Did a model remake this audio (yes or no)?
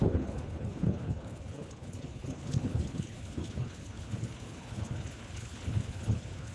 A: yes